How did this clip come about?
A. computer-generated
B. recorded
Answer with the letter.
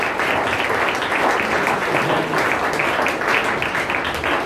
B